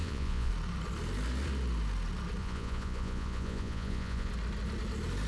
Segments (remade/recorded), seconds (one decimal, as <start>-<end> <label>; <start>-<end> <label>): 0.0-0.5 remade; 0.5-2.4 recorded; 2.4-4.3 remade; 4.3-5.3 recorded